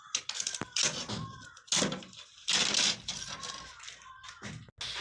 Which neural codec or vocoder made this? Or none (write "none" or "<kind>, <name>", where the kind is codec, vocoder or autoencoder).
none